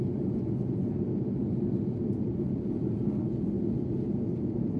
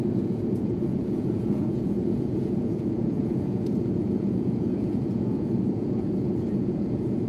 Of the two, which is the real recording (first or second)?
first